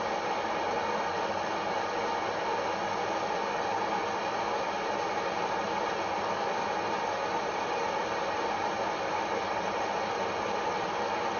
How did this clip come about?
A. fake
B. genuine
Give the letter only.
B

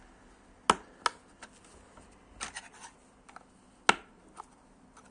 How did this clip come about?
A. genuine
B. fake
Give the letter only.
A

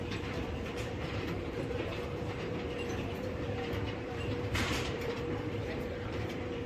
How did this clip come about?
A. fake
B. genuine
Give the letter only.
A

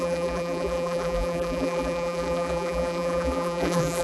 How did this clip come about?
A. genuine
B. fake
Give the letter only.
B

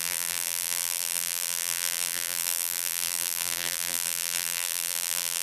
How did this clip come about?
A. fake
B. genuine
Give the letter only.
A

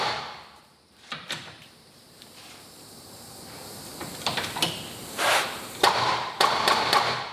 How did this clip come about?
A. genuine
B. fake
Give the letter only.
B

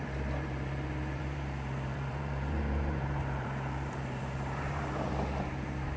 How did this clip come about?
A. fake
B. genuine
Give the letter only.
A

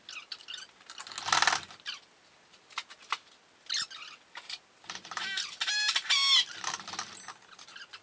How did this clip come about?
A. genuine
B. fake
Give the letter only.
A